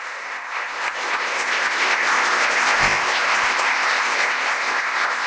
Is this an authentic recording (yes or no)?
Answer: no